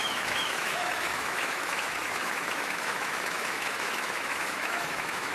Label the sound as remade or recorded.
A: remade